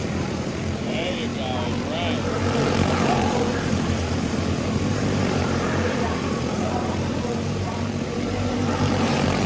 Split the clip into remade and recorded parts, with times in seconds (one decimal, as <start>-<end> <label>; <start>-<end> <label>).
0.0-1.3 remade; 1.3-2.7 recorded; 2.7-9.5 remade